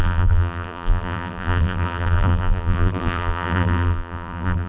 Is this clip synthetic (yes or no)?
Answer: yes